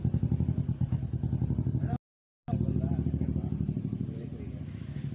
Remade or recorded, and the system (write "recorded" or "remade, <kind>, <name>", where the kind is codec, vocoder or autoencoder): recorded